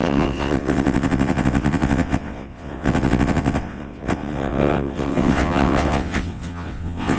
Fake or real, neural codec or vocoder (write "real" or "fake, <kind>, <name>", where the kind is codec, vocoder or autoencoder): fake, vocoder, WaveNeXt